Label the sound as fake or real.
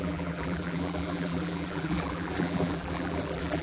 fake